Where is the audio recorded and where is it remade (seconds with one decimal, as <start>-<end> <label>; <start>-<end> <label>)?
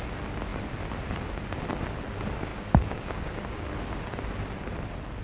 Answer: 0.0-2.5 recorded; 2.5-3.7 remade; 3.7-5.2 recorded